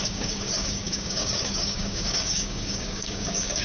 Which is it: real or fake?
fake